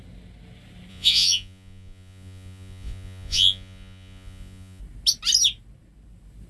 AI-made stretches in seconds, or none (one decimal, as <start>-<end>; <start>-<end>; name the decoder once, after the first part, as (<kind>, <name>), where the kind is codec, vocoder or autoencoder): 0.9-4.8 (vocoder, Vocos)